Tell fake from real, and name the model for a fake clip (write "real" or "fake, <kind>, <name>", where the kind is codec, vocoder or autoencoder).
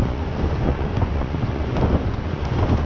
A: fake, vocoder, Vocos